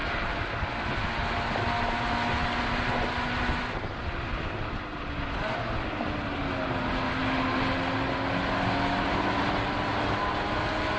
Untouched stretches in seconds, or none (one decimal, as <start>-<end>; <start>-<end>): 0.0-11.0